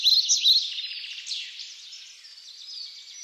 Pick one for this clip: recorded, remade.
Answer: recorded